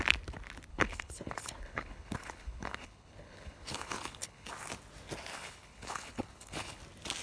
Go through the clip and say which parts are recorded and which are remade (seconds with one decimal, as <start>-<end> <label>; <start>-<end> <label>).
0.0-0.7 recorded; 0.7-4.5 remade; 4.5-5.3 recorded; 5.3-6.8 remade; 6.8-7.2 recorded